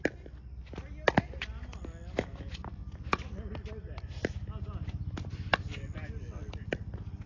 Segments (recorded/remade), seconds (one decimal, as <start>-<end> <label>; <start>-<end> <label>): 0.0-7.3 recorded